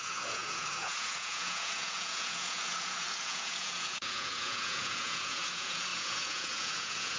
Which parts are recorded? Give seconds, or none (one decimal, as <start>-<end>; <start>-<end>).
none